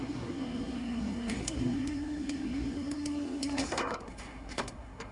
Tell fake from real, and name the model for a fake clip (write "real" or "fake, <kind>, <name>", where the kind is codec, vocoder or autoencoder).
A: fake, codec, SNAC